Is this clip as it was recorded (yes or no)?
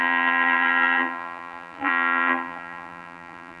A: no